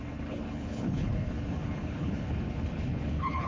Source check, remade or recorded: remade